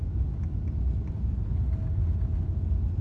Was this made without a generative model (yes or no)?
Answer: yes